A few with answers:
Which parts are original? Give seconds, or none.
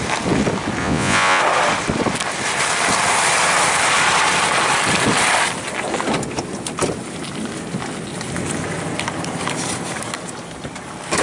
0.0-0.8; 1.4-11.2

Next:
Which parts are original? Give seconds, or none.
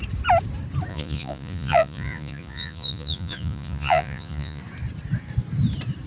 0.0-0.9; 4.6-6.1